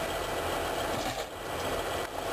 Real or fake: real